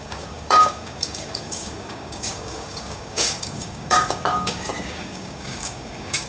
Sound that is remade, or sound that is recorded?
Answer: remade